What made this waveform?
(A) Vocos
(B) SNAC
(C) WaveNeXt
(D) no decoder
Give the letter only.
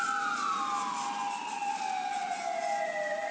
D